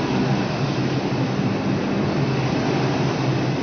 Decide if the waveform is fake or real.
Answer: real